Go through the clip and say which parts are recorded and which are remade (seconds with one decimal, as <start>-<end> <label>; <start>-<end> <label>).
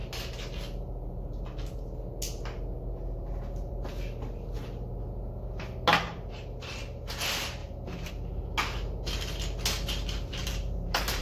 0.0-7.6 recorded; 7.6-8.1 remade; 8.1-10.4 recorded; 10.4-11.2 remade